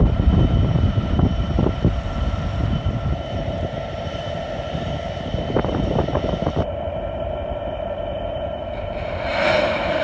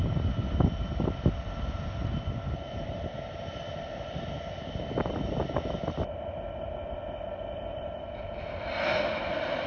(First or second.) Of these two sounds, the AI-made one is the first